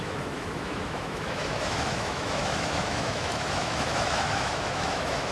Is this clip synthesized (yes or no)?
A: yes